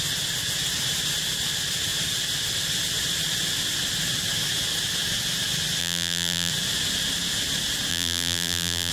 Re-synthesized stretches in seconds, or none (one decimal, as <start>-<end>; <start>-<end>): 5.8-6.5; 7.9-8.9